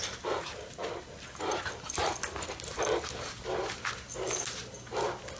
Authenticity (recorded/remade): recorded